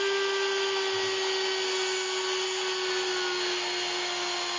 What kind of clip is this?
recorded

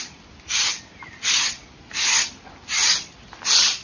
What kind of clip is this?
recorded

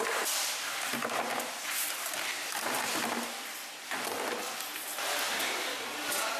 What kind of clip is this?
recorded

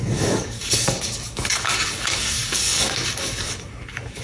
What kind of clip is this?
remade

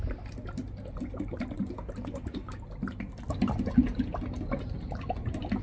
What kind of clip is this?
recorded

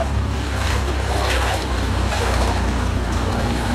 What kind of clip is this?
remade